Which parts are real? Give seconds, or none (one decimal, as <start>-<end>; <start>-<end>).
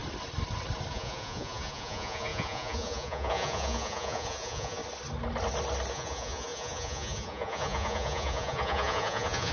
0.0-0.9; 4.8-5.9